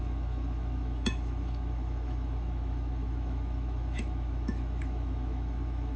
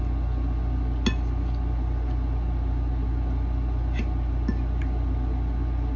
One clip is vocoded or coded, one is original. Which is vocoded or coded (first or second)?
first